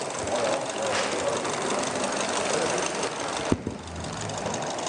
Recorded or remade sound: recorded